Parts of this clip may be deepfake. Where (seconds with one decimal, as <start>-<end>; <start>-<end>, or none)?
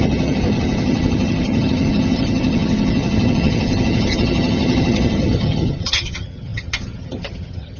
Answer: 0.0-7.8